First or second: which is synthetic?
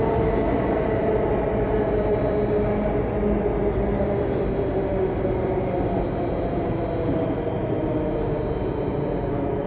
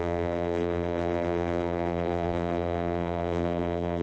second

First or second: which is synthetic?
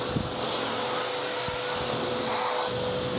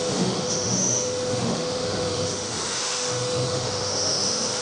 second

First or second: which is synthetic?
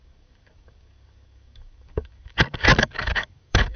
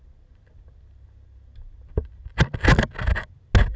first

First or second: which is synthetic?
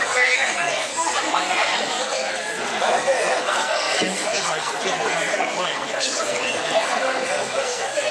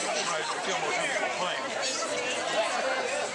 first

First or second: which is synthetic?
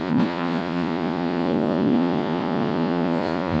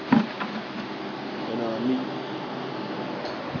first